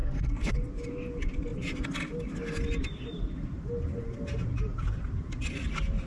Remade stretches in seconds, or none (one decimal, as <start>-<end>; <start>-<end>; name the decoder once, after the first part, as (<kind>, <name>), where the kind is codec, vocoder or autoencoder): 0.0-0.5 (codec, SNAC)